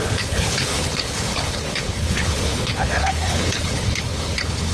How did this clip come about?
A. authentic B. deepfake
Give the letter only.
B